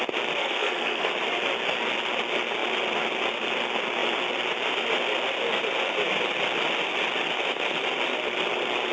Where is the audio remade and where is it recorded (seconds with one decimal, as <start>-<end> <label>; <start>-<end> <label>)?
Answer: 0.0-0.4 recorded; 0.4-1.1 remade; 1.1-8.9 recorded